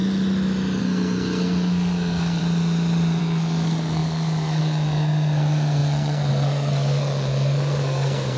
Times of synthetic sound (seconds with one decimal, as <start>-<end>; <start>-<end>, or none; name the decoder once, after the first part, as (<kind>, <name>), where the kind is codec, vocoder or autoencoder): 0.8-2.4 (codec, SNAC); 3.2-8.4